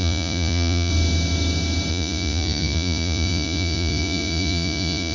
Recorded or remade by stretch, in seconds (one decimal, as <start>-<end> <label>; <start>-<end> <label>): 0.0-0.9 remade; 0.9-1.9 recorded; 1.9-5.1 remade